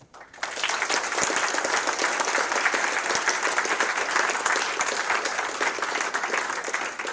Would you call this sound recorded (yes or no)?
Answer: yes